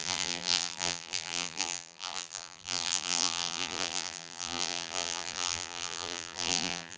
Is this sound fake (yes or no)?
yes